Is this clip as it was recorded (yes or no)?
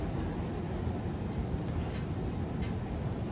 yes